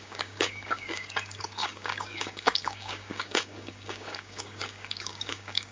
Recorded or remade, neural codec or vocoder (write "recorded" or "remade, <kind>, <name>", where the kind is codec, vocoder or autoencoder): remade, codec, DAC